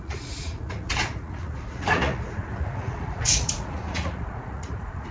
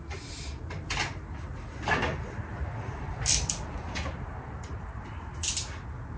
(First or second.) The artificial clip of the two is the first